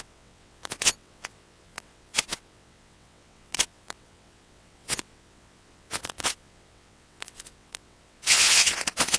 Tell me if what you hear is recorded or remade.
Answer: remade